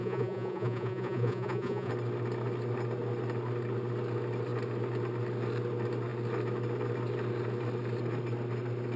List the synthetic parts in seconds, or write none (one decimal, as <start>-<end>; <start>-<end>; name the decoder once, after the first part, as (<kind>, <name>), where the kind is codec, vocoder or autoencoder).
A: 0.0-1.9 (vocoder, Vocos)